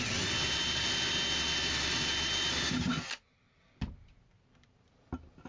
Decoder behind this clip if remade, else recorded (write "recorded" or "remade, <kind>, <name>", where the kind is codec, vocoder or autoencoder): recorded